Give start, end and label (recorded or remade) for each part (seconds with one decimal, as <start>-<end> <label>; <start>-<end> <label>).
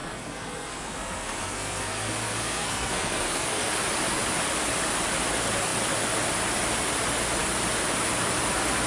0.0-3.7 remade; 3.7-8.9 recorded